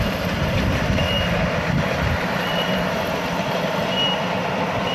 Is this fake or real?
real